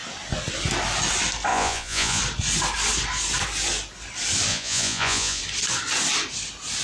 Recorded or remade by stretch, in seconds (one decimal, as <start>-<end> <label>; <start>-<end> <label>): 0.0-1.5 recorded; 1.5-2.2 remade; 2.2-4.5 recorded; 4.5-5.4 remade; 5.4-6.8 recorded